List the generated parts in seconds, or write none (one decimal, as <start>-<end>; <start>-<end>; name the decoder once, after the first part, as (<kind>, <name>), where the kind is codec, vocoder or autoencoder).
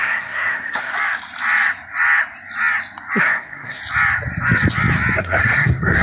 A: 0.0-0.9 (codec, SNAC); 3.2-3.8; 5.2-6.0